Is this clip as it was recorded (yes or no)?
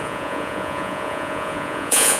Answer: no